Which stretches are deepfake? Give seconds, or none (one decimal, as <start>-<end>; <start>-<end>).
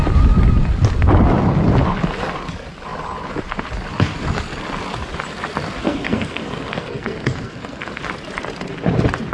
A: 5.8-8.0